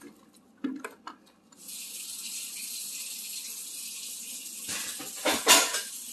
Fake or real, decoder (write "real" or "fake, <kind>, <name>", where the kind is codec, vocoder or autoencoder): real